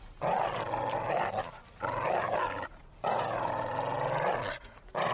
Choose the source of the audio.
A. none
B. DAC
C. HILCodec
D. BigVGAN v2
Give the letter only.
A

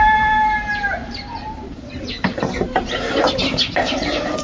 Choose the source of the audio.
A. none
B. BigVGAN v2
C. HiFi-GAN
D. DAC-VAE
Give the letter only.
B